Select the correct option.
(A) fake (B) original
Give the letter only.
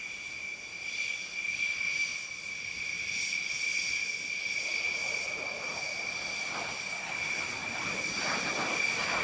B